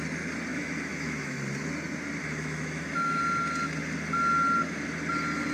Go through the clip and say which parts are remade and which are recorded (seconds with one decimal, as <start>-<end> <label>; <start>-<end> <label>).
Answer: 0.0-0.5 recorded; 0.5-1.4 remade; 1.4-2.2 recorded; 2.2-3.2 remade; 3.2-5.5 recorded